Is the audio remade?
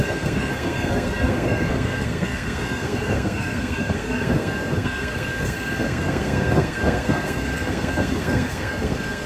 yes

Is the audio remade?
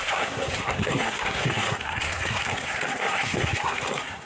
yes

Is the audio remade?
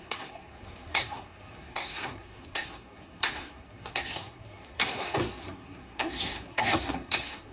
yes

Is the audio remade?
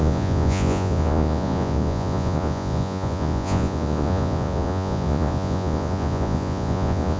yes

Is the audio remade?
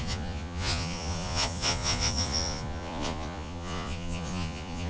yes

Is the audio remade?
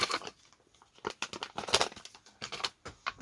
no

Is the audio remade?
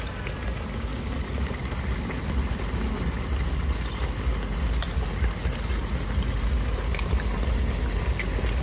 no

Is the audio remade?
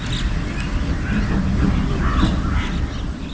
no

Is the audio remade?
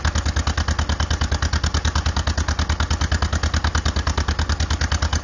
no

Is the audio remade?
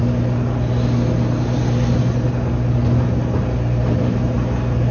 no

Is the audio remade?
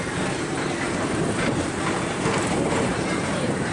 yes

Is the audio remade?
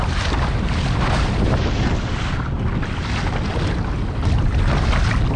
no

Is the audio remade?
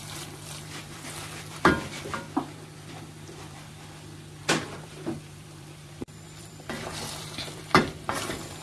yes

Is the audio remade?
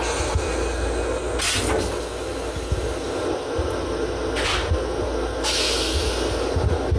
no